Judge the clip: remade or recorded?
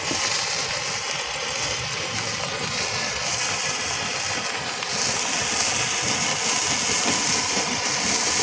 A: recorded